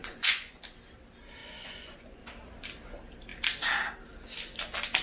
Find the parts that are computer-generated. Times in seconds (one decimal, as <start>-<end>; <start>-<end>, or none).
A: 0.0-0.6; 1.4-2.2